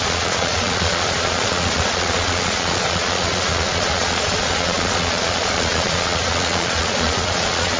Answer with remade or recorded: remade